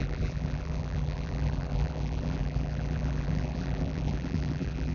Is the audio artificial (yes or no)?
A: yes